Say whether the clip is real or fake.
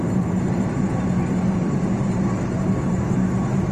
fake